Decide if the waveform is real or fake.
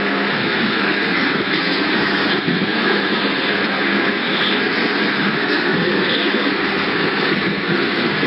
fake